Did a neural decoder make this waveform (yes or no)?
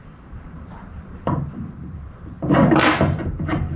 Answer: yes